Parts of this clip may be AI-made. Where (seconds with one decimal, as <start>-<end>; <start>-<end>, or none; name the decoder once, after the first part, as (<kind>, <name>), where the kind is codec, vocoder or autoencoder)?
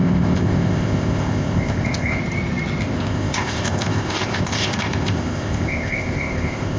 0.0-2.2 (codec, ZipCodec); 2.8-6.8